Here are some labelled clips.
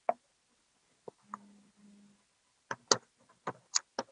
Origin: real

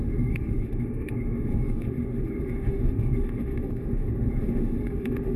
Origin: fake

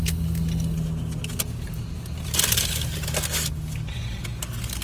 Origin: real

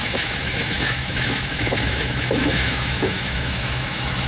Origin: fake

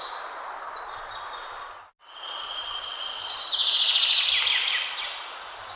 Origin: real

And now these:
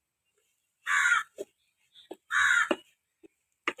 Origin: real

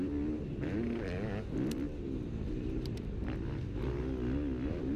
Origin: real